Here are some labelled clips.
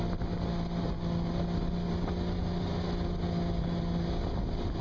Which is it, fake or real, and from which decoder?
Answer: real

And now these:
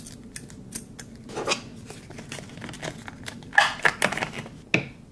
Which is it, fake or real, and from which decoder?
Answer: real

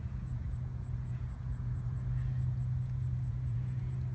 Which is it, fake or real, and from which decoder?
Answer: fake, vocoder, Vocos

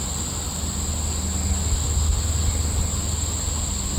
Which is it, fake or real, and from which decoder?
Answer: real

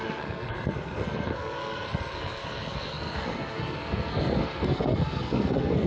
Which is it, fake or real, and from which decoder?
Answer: fake, codec, SNAC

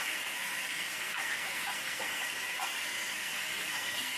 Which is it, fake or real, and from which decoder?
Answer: fake, codec, SNAC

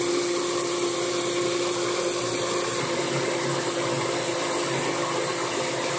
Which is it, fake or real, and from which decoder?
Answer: real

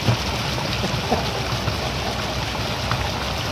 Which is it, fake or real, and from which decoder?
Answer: real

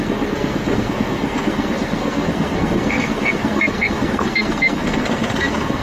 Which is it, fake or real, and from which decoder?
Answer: fake, codec, SNAC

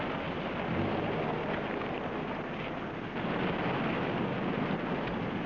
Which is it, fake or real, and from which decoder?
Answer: real